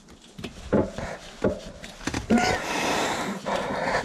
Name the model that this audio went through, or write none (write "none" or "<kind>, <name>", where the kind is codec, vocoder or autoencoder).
none